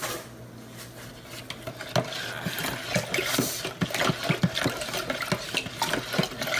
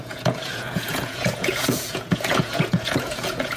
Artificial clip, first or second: second